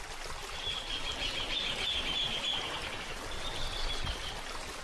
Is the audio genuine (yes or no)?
yes